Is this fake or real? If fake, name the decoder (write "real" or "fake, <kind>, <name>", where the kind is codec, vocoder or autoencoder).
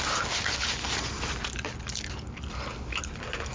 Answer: real